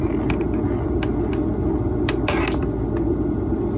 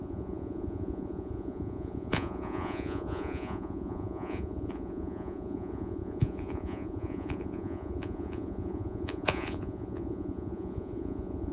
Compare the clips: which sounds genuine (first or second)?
first